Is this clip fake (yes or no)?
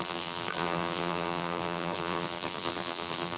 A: yes